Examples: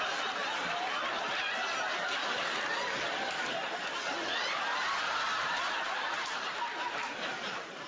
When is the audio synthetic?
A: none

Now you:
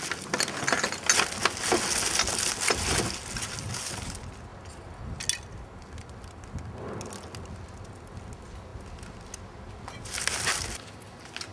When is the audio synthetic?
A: none

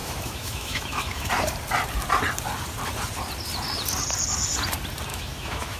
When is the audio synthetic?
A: 0.0-1.3 (autoencoder, DAC-VAE); 5.1-5.8

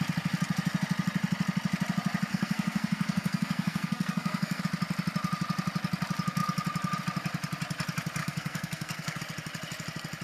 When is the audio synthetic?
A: 2.3-4.6 (codec, SNAC); 8.2-9.2